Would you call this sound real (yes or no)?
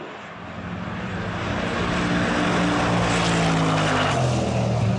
yes